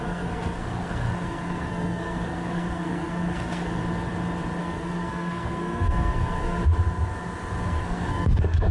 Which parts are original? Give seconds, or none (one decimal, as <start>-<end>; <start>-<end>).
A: 3.8-4.6; 6.6-7.6

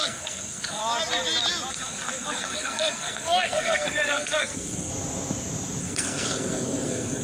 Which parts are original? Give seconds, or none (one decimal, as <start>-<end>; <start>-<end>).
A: 0.8-1.7; 4.9-5.8